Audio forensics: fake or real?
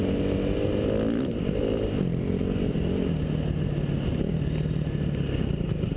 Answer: real